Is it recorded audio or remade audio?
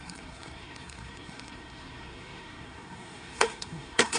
remade